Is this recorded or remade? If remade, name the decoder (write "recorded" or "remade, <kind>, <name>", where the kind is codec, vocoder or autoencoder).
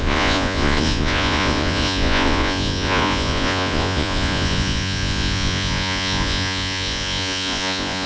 remade, vocoder, Vocos